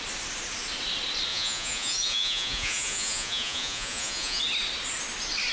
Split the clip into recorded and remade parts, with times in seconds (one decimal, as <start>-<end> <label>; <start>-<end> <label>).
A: 0.0-1.3 recorded; 1.3-4.4 remade; 4.4-5.5 recorded

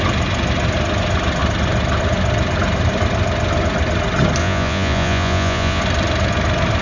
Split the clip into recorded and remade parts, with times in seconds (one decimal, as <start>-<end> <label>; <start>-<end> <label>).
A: 0.0-4.4 recorded; 4.4-5.8 remade; 5.8-6.8 recorded

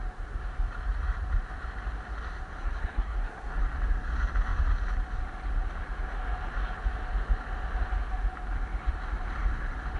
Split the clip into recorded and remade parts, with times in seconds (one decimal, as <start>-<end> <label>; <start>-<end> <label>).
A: 0.0-2.6 recorded; 2.6-3.6 remade; 3.6-10.0 recorded

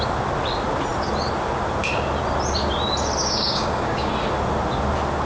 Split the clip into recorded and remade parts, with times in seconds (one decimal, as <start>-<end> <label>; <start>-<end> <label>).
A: 0.0-3.2 recorded; 3.2-4.1 remade; 4.1-5.3 recorded

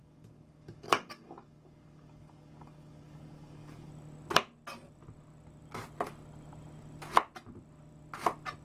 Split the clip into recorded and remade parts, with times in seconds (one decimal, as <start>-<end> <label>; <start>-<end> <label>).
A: 0.0-3.9 remade; 3.9-8.6 recorded

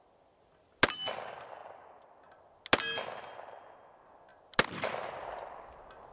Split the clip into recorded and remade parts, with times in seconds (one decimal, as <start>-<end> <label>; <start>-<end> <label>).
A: 0.0-6.1 recorded

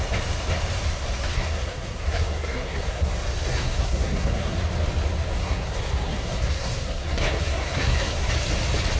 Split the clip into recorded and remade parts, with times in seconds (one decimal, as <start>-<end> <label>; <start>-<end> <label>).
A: 0.0-1.3 recorded; 1.3-3.1 remade; 3.1-3.5 recorded; 3.5-4.6 remade; 4.6-5.4 recorded; 5.4-8.3 remade; 8.3-9.0 recorded